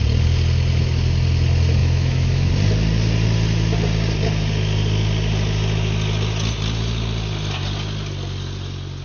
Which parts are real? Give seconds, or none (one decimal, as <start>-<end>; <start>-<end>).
0.0-1.8; 2.5-9.0